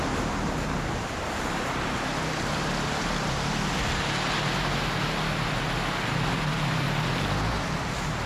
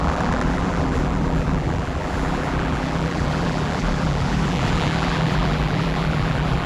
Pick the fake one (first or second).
second